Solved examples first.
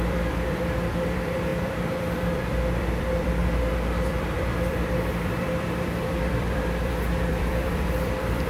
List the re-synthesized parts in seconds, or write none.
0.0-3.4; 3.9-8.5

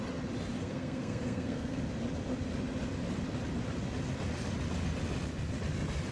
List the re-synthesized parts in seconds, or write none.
0.6-1.8

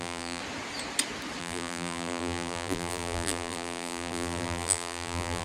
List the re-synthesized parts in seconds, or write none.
0.0-0.4; 1.4-5.4

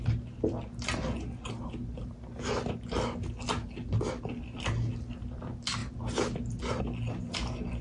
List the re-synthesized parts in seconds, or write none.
none

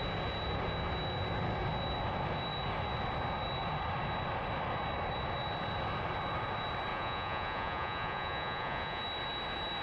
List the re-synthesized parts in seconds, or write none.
6.9-9.0

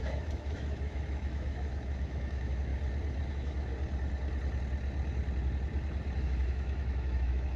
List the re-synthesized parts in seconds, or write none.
0.0-2.7; 3.3-3.7; 6.2-7.6

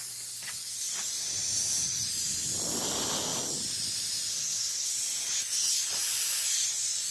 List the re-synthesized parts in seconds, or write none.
4.3-4.9